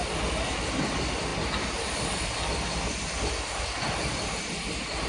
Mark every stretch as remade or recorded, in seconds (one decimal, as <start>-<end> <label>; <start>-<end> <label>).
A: 0.0-5.1 recorded